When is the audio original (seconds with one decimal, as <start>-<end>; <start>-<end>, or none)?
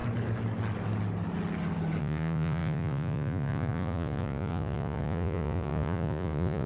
0.0-2.0